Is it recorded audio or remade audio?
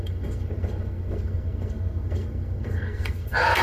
remade